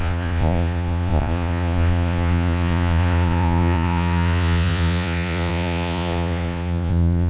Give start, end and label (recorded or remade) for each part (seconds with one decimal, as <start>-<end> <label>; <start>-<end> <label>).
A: 0.0-7.3 remade